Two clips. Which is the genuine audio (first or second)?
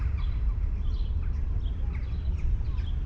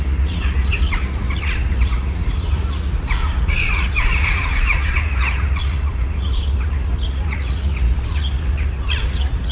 first